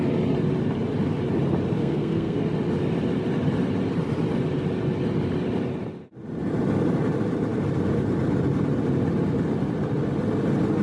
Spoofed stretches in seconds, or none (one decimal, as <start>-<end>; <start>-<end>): 1.8-2.4